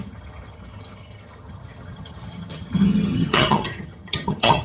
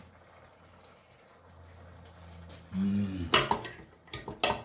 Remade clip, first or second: first